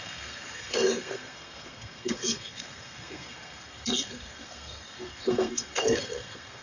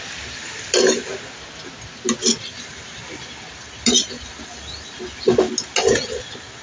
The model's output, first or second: first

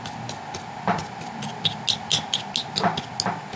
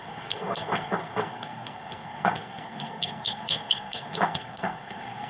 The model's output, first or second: second